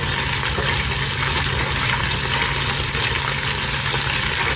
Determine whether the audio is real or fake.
real